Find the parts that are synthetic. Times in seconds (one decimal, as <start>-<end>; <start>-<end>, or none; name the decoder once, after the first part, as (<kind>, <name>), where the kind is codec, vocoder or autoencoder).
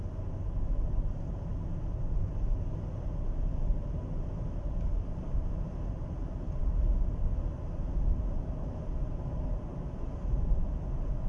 none